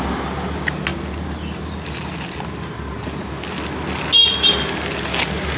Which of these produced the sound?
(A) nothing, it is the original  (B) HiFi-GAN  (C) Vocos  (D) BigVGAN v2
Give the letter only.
A